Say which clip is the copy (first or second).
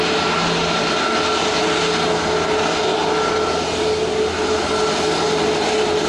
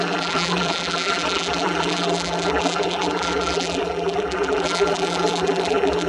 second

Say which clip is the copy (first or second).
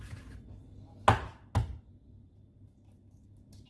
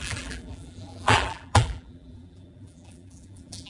second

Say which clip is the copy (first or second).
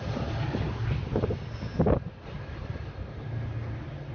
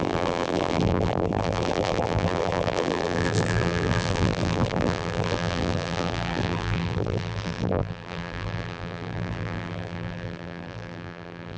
second